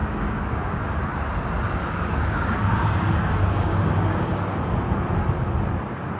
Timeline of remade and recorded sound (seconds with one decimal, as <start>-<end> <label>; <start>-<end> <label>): 0.0-1.0 remade; 1.0-1.8 recorded; 1.8-4.6 remade; 4.6-6.2 recorded